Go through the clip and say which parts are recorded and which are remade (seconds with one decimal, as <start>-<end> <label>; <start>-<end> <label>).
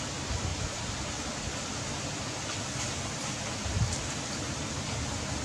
0.0-5.4 recorded